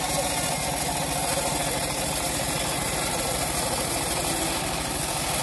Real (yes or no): yes